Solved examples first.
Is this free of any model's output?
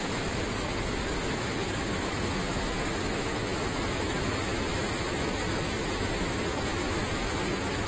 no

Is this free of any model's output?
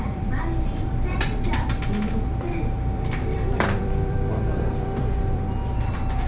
no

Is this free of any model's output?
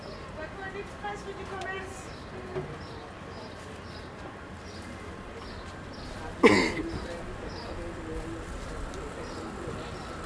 yes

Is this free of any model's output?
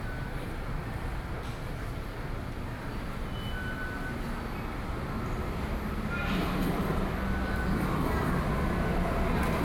yes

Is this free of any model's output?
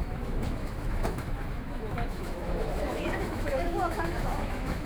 no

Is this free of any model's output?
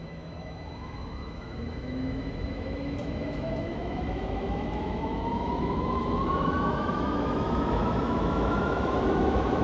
no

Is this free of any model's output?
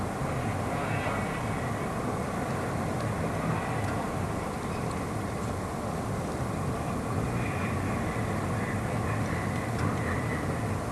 yes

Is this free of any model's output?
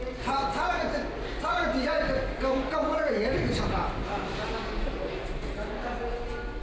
yes